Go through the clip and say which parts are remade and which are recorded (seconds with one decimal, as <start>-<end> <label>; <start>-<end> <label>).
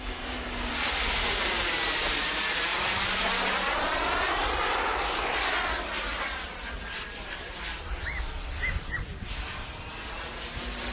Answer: 0.0-7.7 recorded; 7.7-9.0 remade; 9.0-10.9 recorded